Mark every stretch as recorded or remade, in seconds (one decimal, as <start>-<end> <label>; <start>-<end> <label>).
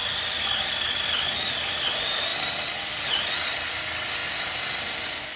0.0-5.4 recorded